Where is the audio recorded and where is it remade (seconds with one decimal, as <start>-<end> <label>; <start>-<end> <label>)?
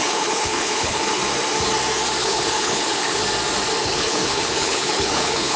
0.0-1.2 remade; 1.2-2.2 recorded; 2.2-3.2 remade; 3.2-3.8 recorded; 3.8-5.6 remade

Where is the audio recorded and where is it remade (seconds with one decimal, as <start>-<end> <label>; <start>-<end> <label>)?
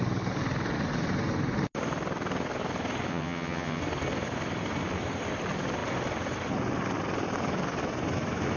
0.0-3.1 recorded; 3.1-3.8 remade; 3.8-8.6 recorded